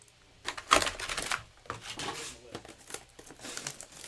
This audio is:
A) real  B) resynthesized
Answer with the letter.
A